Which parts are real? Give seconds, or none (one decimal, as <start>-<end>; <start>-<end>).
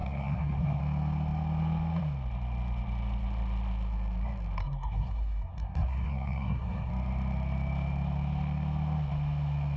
0.8-4.6; 6.9-9.8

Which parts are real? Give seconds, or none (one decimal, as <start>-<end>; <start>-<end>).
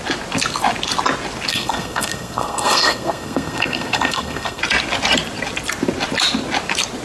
0.0-1.5; 4.6-7.0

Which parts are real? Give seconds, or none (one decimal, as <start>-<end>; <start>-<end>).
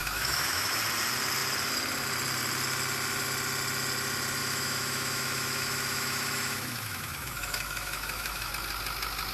0.8-4.4; 8.5-9.3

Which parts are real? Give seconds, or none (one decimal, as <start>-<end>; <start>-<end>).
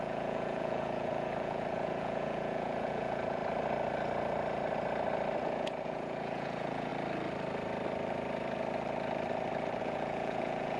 3.4-5.4; 6.9-9.8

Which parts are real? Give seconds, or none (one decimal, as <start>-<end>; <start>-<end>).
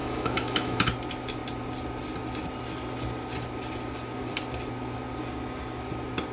0.8-6.3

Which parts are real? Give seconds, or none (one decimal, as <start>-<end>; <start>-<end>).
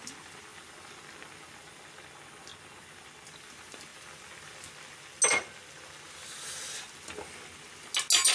0.0-8.3